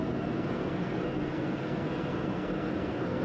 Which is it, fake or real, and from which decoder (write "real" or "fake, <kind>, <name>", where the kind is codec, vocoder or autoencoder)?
fake, codec, SNAC